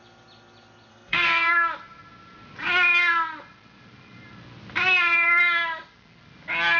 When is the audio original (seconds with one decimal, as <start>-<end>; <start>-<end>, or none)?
0.0-0.9; 1.5-6.8